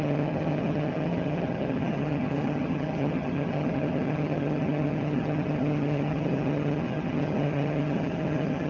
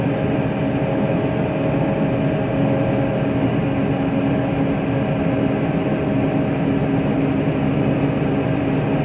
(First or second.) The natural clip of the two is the second